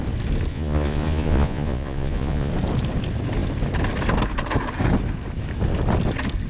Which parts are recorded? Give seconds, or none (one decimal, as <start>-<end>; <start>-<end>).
0.0-0.5; 2.5-6.5